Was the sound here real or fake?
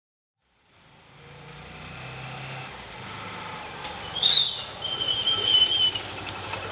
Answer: real